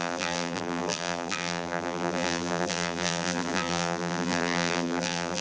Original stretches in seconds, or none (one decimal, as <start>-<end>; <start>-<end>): none